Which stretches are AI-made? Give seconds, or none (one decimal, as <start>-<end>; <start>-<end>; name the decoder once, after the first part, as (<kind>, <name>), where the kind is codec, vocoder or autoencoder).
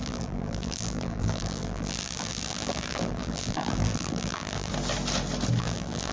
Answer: 0.0-4.7 (vocoder, BigVGAN v2); 5.6-6.1